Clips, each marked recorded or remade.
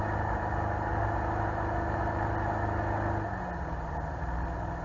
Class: recorded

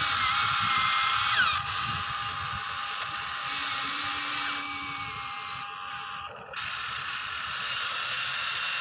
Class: recorded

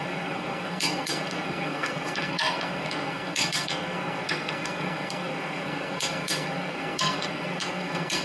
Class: remade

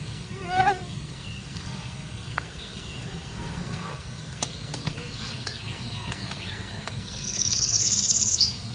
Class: remade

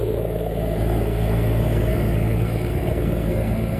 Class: remade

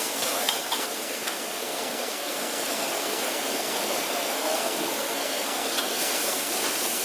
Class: remade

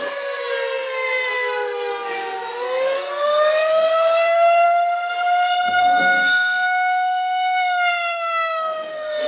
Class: remade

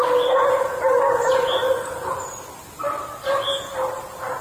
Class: recorded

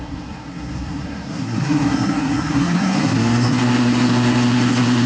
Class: remade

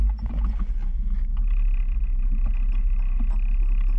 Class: recorded